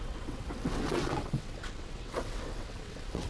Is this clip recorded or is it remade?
remade